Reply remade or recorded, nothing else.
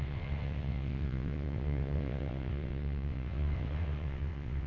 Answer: remade